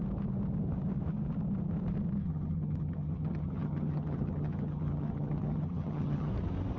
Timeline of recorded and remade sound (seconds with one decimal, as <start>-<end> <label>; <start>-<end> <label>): 0.0-2.2 recorded; 2.2-6.3 remade; 6.3-6.8 recorded